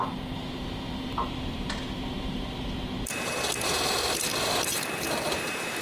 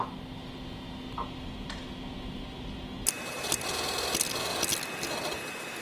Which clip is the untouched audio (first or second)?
second